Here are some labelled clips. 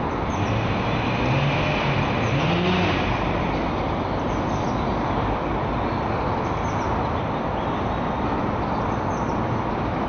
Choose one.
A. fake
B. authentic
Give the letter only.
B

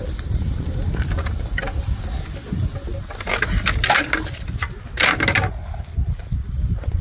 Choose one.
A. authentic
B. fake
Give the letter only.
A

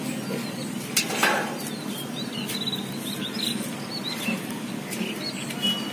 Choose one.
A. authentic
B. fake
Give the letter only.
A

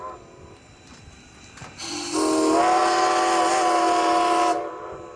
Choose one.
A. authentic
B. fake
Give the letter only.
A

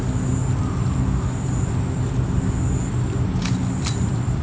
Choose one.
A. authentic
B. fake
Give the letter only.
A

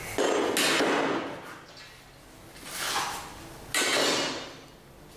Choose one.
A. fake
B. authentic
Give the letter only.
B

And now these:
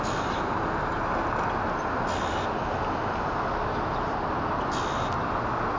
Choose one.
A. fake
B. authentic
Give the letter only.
B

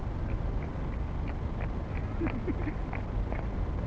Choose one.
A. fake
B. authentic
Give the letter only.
B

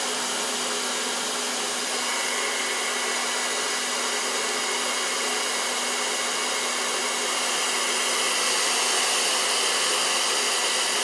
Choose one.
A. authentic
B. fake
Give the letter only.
A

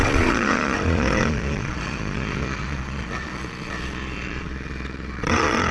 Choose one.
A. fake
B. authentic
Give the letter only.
A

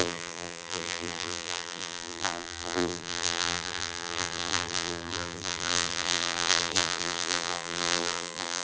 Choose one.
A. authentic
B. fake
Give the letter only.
B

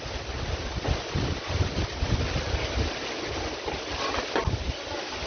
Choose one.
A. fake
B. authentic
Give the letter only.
B